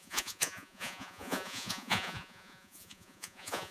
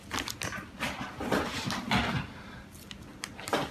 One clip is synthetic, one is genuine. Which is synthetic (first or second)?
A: first